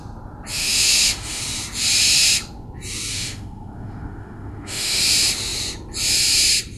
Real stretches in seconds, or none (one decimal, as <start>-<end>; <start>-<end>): 0.0-0.6; 1.4-3.1; 5.0-6.8